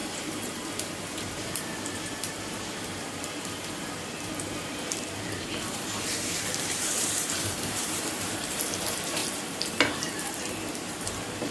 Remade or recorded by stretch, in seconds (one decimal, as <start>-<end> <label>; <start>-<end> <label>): 0.0-11.5 remade